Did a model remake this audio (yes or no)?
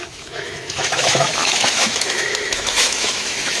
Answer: yes